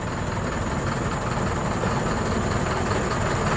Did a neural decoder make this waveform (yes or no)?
no